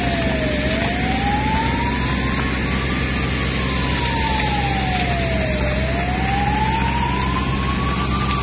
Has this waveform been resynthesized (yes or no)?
no